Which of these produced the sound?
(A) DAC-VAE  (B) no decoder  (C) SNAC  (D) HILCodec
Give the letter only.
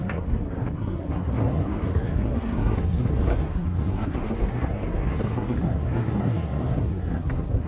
C